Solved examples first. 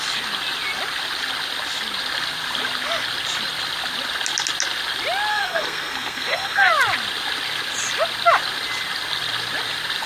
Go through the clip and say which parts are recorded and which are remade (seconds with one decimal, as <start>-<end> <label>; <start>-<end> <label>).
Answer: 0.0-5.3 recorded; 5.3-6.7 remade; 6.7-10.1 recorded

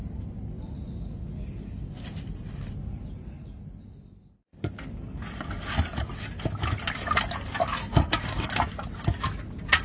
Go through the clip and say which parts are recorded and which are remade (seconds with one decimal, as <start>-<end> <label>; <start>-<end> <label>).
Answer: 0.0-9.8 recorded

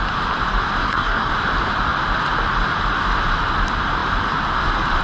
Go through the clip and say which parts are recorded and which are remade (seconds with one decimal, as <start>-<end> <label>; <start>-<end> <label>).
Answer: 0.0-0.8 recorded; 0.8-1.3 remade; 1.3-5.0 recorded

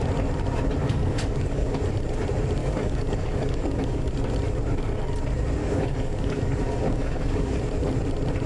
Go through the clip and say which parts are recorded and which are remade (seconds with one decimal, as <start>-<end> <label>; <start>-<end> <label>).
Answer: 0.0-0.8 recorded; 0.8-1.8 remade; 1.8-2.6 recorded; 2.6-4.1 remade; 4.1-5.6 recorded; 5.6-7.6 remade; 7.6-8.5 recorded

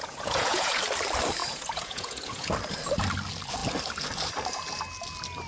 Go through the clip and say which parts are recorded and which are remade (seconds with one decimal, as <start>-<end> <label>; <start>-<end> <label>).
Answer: 0.0-0.8 remade; 0.8-1.4 recorded; 1.4-2.5 remade; 2.5-5.5 recorded

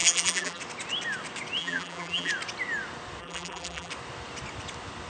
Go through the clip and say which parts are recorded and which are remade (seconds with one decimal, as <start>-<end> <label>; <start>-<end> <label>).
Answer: 0.0-0.6 remade; 0.6-1.6 recorded; 1.6-2.3 remade; 2.3-3.2 recorded; 3.2-3.9 remade; 3.9-5.1 recorded

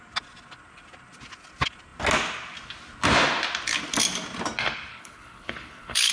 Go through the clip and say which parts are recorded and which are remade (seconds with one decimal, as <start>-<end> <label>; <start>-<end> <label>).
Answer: 0.0-4.9 recorded; 4.9-6.1 remade

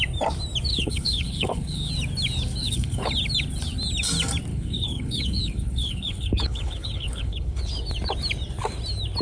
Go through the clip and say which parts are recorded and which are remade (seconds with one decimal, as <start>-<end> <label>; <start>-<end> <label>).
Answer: 0.0-0.7 recorded; 0.7-1.9 remade; 1.9-2.6 recorded; 2.6-3.1 remade; 3.1-4.5 recorded; 4.5-7.7 remade; 7.7-9.2 recorded